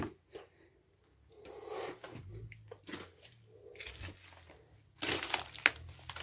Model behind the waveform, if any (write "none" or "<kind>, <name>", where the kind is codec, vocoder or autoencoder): none